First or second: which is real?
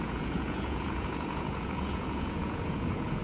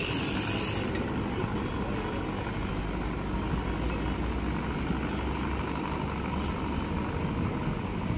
second